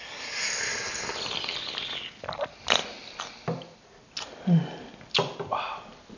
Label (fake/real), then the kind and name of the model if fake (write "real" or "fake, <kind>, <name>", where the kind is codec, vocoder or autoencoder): real